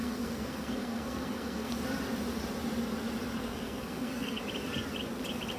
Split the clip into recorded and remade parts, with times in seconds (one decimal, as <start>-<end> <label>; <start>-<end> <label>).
0.0-1.7 remade; 1.7-3.4 recorded; 3.4-4.4 remade; 4.4-5.6 recorded